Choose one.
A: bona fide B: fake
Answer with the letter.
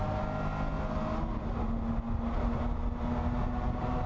A